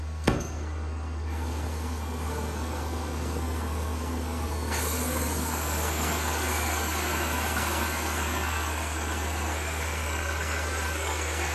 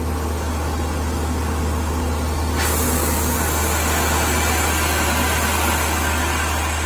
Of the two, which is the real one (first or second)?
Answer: second